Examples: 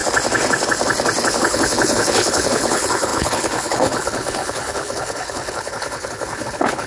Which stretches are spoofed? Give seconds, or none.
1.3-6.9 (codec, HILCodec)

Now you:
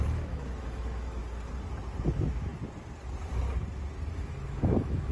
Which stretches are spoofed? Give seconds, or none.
0.0-1.2 (autoencoder, DAC-VAE); 2.1-2.5; 4.2-5.1

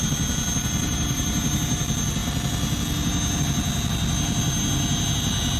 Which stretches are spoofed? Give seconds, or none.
0.8-1.8 (vocoder, BigVGAN v2)

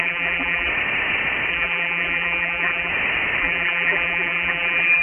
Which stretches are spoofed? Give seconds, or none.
0.0-0.7 (vocoder, BigVGAN v2); 1.5-2.9; 3.4-5.0

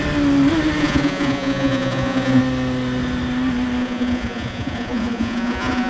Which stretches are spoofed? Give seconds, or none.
0.8-2.4 (vocoder, Vocos); 3.8-5.9

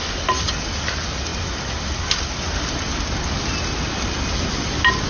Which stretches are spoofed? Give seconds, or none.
none

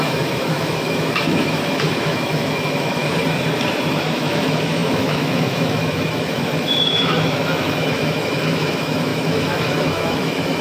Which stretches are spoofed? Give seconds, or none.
0.0-3.2 (autoencoder, DAC-VAE); 3.9-10.6

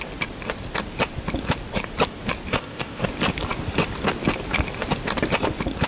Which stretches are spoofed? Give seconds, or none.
2.5-3.0 (codec, ZipCodec)